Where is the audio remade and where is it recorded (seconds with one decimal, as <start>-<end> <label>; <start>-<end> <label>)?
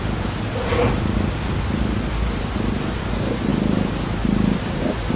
0.0-5.2 recorded